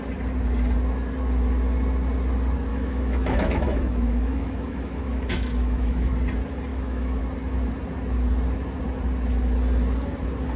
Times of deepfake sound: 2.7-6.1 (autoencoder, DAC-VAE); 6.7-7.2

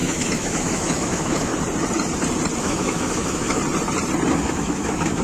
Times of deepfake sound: 0.0-1.5 (autoencoder, DAC-VAE); 2.6-3.6; 4.3-5.2